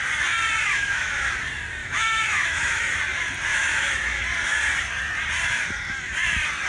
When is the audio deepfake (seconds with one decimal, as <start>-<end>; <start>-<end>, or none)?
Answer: 0.6-1.3; 1.8-2.9; 3.5-4.2